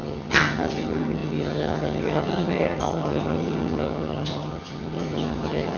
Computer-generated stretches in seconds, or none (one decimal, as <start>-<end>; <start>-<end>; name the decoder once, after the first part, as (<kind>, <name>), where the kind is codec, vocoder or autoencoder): 0.0-5.8 (vocoder, HiFi-GAN)